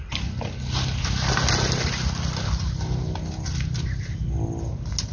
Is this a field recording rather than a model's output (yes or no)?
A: yes